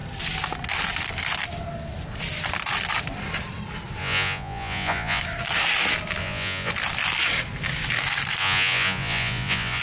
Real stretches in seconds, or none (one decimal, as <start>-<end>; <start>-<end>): 0.0-4.0; 5.2-6.2; 6.7-8.4